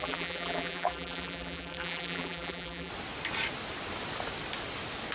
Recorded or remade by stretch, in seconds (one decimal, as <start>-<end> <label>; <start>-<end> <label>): 0.0-2.9 remade; 2.9-5.1 recorded